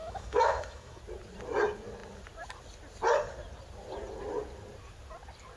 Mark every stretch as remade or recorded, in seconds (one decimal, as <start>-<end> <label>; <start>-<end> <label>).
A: 0.0-1.0 remade; 1.0-5.6 recorded